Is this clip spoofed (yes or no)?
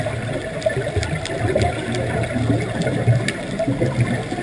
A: no